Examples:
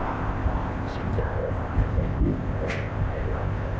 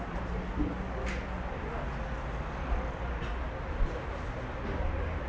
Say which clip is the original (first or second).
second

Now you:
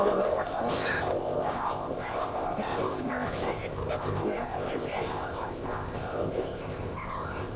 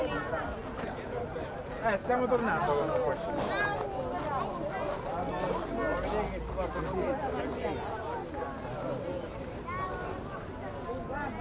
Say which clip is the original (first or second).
second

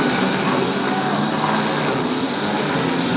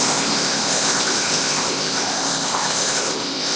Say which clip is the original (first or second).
first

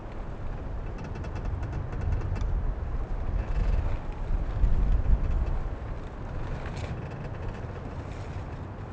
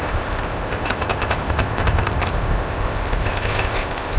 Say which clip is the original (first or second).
first